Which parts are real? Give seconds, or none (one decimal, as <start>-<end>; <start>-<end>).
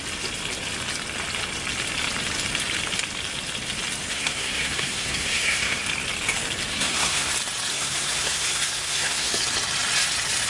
0.0-4.1; 5.8-6.7; 7.3-7.7; 9.3-10.5